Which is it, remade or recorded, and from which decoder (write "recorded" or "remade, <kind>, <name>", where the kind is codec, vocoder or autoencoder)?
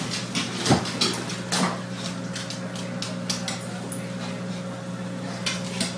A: recorded